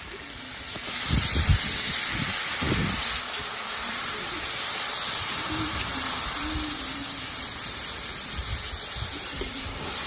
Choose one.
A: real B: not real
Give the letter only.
A